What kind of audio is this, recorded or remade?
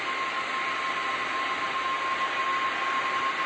recorded